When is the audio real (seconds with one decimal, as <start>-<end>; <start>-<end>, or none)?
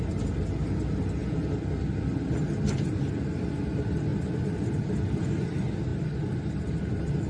0.0-7.3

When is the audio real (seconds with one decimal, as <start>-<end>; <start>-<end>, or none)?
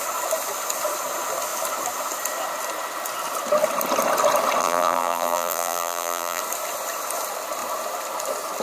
0.0-4.6; 6.4-8.6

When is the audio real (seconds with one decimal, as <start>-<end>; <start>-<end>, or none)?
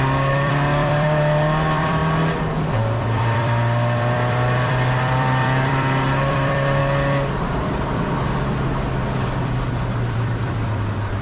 6.8-9.4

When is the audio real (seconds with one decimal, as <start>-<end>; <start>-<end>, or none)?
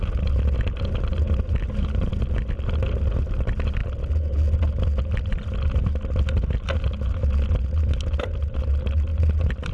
2.1-3.1; 3.8-8.2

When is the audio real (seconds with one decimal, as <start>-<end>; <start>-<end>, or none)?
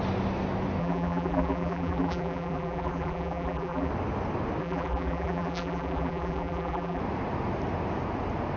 0.0-0.8; 3.9-4.6; 7.0-8.6